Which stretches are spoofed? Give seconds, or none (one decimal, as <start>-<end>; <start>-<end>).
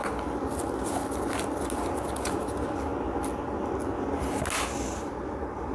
none